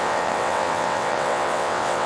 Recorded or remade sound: remade